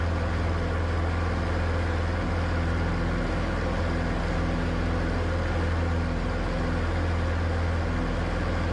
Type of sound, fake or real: real